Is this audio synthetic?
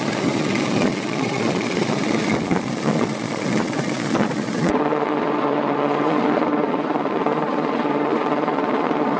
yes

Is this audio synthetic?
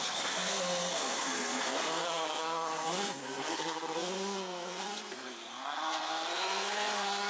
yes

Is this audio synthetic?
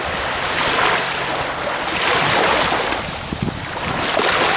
no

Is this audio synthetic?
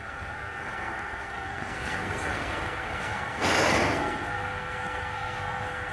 yes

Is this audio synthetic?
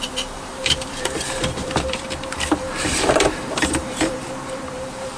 yes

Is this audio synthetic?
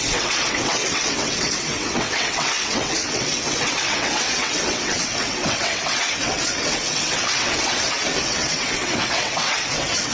yes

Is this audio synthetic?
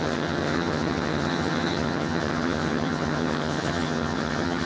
yes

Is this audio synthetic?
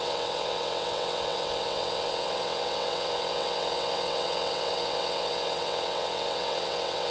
yes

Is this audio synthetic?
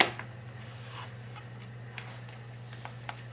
no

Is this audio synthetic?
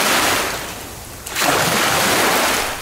no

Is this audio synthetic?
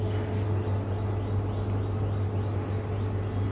no